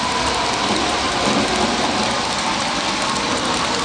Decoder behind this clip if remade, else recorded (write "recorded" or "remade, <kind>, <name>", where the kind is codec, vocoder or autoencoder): recorded